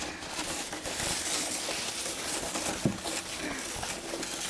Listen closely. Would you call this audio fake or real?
real